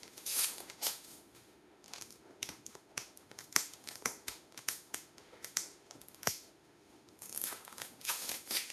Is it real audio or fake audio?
fake